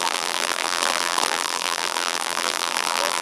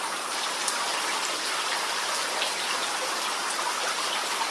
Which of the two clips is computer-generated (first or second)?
first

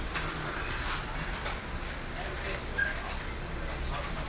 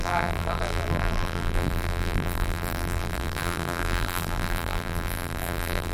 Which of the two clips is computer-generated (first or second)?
second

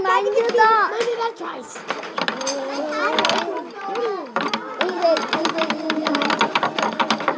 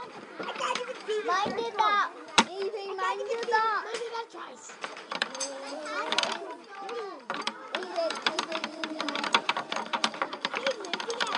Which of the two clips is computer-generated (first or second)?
second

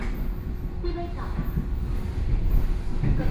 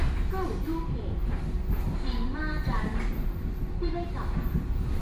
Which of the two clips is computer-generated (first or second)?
second